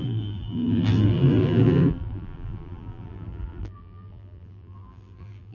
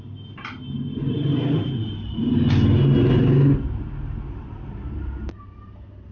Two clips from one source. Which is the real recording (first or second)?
second